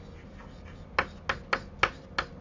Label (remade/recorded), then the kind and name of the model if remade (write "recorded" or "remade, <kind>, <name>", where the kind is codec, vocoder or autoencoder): recorded